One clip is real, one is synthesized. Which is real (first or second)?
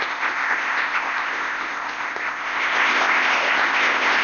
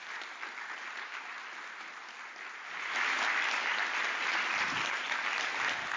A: second